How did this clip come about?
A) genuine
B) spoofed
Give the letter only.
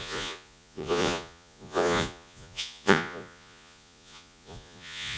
B